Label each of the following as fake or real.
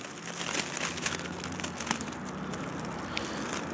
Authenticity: real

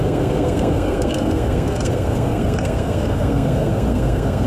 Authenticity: fake